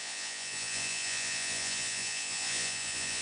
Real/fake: fake